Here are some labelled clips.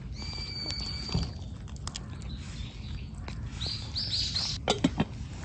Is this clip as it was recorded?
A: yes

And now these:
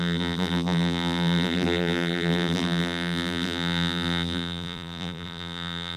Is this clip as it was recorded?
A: no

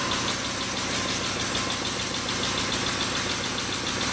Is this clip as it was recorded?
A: yes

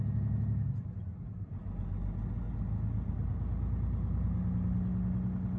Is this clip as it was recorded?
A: yes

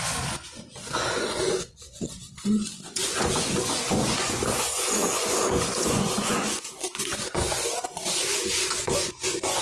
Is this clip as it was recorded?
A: no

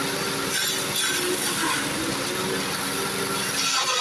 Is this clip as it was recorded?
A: yes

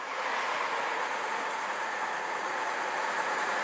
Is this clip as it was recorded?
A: no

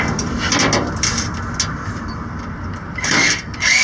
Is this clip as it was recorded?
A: yes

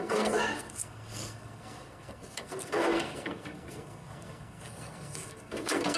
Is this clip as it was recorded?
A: no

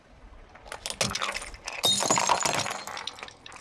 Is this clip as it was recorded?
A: yes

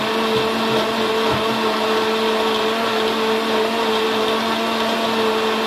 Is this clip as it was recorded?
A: yes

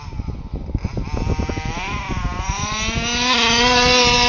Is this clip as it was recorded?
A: yes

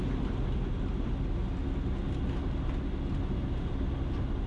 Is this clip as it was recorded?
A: yes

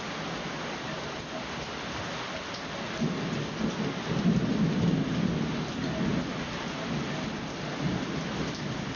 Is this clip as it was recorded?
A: yes